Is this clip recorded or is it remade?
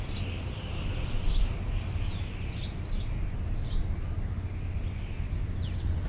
recorded